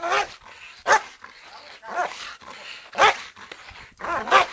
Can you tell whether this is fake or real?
real